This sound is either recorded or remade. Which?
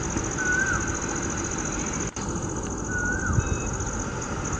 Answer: recorded